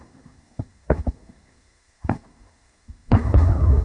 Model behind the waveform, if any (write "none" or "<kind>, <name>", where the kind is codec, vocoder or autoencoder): codec, SNAC